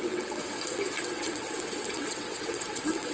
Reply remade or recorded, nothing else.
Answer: remade